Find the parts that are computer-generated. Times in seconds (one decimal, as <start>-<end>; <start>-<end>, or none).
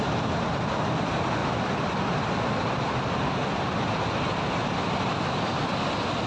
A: none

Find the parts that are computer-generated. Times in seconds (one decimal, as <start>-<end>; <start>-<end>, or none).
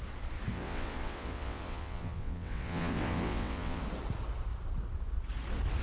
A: 0.5-3.8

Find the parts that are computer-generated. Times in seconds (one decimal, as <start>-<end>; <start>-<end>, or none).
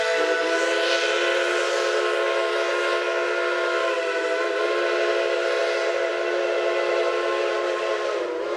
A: none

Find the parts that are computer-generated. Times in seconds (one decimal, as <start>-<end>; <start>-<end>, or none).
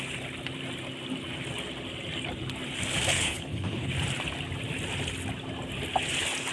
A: 3.1-3.9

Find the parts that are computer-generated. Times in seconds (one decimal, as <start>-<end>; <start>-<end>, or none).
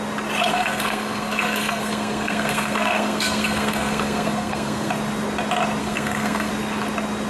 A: 0.5-4.9; 5.8-6.5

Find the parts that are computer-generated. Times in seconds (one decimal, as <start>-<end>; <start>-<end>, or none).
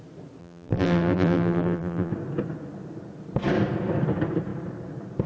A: 0.4-2.1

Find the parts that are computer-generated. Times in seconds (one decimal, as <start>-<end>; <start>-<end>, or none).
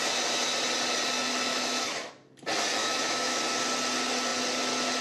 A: 1.5-2.1; 2.8-3.4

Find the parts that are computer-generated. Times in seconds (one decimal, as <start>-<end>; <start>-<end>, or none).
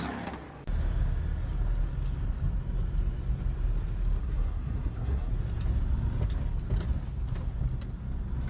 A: 4.2-5.3